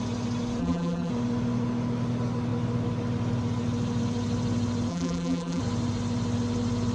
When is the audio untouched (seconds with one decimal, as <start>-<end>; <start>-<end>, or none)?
0.0-0.6; 1.1-4.9; 5.6-6.9